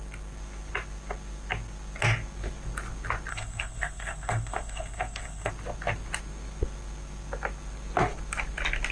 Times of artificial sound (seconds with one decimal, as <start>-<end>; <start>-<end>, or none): 3.3-5.5